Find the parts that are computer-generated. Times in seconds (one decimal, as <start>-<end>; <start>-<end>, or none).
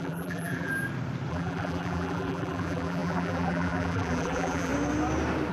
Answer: 0.0-0.7; 1.3-4.7